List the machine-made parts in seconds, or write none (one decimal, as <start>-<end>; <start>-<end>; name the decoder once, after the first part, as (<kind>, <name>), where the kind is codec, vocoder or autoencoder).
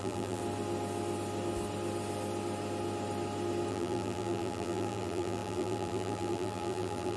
0.0-0.4 (vocoder, BigVGAN v2); 3.7-7.2